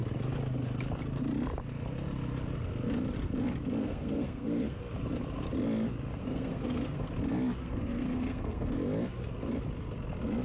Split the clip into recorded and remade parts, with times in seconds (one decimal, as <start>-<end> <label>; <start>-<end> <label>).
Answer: 0.0-3.8 recorded; 3.8-4.8 remade; 4.8-6.1 recorded; 6.1-7.1 remade; 7.1-7.6 recorded; 7.6-8.7 remade; 8.7-10.4 recorded